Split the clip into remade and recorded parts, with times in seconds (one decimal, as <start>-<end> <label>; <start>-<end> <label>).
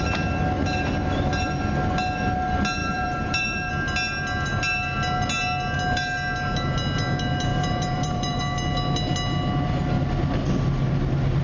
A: 0.0-2.8 recorded; 2.8-3.7 remade; 3.7-7.5 recorded; 7.5-8.4 remade; 8.4-11.4 recorded